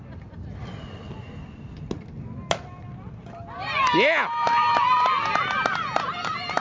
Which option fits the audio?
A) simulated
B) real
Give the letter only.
B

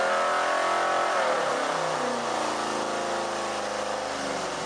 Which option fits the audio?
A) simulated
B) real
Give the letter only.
B